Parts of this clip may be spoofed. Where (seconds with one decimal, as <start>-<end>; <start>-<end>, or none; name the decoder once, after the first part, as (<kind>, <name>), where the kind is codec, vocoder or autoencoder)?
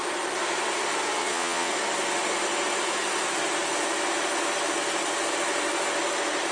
1.2-1.7 (vocoder, Vocos)